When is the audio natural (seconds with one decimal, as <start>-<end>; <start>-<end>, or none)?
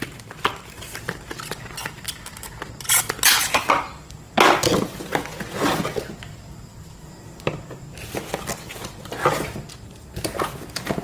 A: 0.0-11.0